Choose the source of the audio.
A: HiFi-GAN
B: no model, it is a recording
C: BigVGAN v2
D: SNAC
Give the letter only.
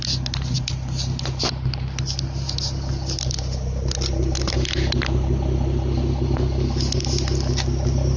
B